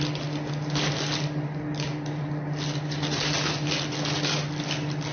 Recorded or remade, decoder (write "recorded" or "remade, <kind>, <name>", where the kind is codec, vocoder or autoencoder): recorded